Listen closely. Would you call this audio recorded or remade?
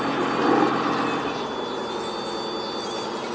recorded